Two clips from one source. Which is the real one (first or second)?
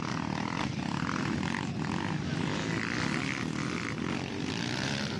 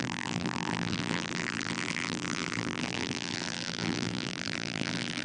first